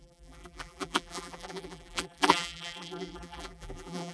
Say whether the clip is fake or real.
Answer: fake